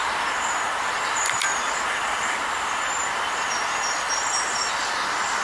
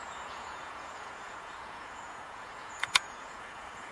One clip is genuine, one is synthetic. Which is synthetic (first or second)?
second